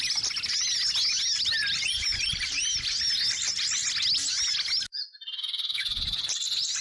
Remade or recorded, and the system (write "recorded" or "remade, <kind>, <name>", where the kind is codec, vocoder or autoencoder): recorded